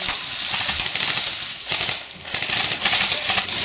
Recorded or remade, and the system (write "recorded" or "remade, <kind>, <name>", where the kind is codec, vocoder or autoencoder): recorded